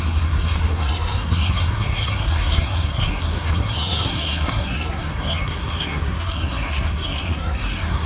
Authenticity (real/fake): fake